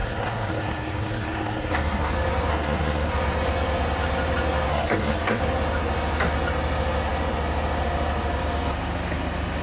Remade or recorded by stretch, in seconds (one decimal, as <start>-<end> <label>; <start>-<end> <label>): 0.0-2.1 remade; 2.1-2.5 recorded; 2.5-3.1 remade; 3.1-4.7 recorded; 4.7-5.4 remade; 5.4-9.6 recorded